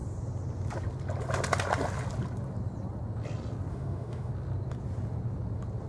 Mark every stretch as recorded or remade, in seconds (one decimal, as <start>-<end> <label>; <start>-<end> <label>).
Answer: 0.0-3.7 recorded; 3.7-4.3 remade; 4.3-5.9 recorded